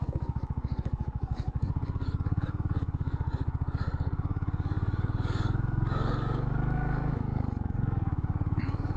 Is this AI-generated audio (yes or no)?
yes